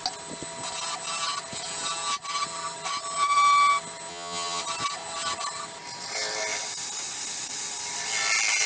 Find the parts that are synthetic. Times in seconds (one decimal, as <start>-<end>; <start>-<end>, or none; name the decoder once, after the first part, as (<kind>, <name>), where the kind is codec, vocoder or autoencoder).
4.1-4.6 (vocoder, HiFi-GAN)